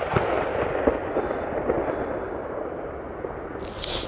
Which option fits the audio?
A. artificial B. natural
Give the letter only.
B